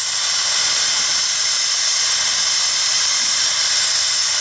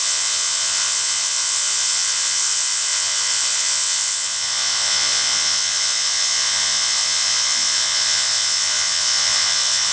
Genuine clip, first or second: first